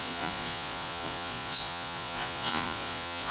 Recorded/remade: remade